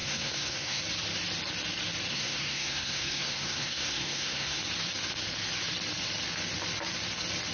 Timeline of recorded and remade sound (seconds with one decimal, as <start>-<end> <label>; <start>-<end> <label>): 0.0-0.8 remade; 0.8-2.1 recorded; 2.1-4.6 remade; 4.6-7.5 recorded